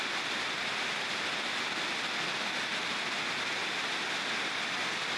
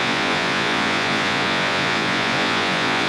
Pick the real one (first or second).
first